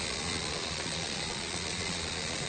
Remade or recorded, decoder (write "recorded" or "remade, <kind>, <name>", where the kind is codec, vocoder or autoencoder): remade, vocoder, Vocos